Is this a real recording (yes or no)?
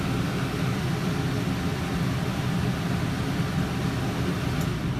yes